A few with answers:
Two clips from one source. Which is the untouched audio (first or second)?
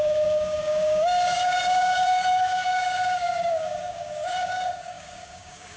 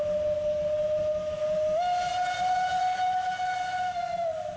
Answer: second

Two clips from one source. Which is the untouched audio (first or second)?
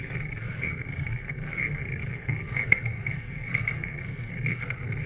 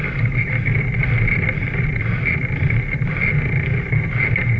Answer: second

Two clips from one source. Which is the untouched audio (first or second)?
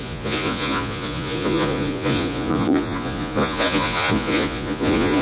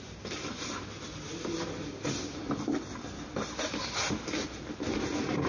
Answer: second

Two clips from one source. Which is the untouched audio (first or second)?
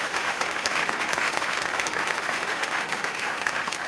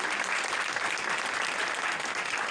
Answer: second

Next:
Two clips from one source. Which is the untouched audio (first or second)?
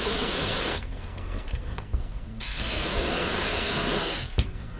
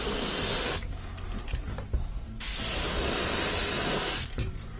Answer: second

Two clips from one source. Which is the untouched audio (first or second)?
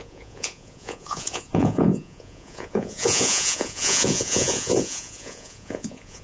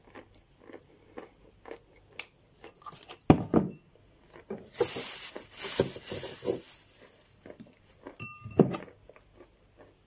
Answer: second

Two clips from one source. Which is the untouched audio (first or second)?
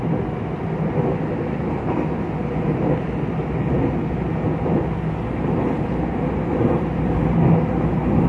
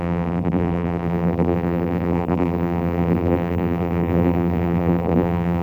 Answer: first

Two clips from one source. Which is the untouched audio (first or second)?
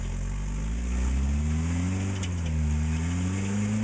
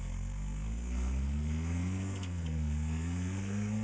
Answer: first